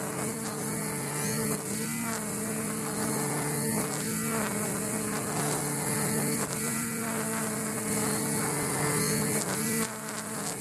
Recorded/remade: recorded